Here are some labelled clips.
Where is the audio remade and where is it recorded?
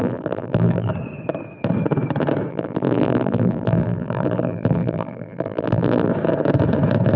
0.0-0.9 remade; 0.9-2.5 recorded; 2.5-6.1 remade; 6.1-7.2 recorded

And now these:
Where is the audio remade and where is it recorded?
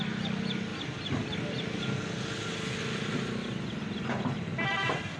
0.0-5.2 recorded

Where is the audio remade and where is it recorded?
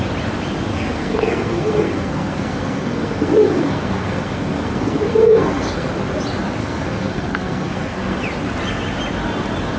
0.0-0.7 recorded; 0.7-5.9 remade; 5.9-6.6 recorded; 6.6-8.2 remade; 8.2-9.8 recorded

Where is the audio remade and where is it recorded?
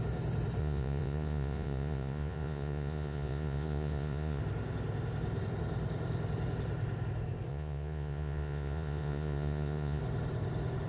0.0-0.6 recorded; 0.6-4.4 remade; 4.4-7.5 recorded; 7.5-10.0 remade; 10.0-10.9 recorded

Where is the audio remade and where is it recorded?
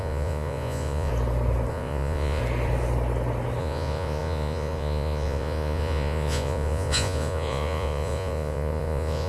0.0-1.1 remade; 1.1-1.7 recorded; 1.7-2.4 remade; 2.4-3.6 recorded; 3.6-9.3 remade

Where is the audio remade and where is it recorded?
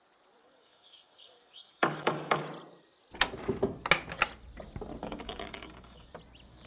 0.0-0.4 recorded; 0.4-2.4 remade; 2.4-5.0 recorded; 5.0-6.1 remade; 6.1-6.7 recorded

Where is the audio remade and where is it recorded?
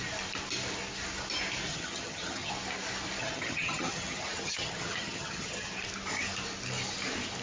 0.0-1.7 recorded; 1.7-2.5 remade; 2.5-3.2 recorded; 3.2-5.7 remade; 5.7-7.4 recorded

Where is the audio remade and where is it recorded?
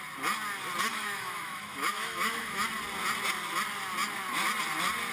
0.0-0.9 recorded; 0.9-2.7 remade; 2.7-5.1 recorded